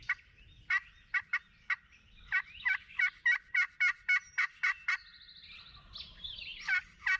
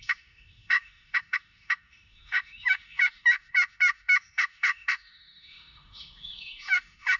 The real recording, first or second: first